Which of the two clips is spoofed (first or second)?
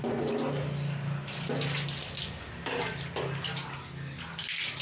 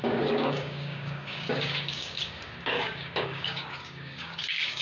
second